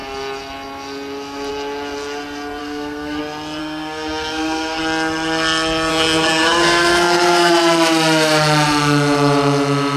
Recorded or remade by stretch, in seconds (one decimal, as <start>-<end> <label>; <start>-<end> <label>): 0.0-2.6 recorded; 2.6-3.2 remade; 3.2-3.6 recorded; 3.6-4.8 remade; 4.8-5.9 recorded; 5.9-7.5 remade; 7.5-10.0 recorded